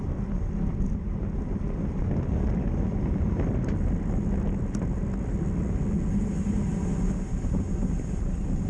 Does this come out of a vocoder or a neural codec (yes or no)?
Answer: no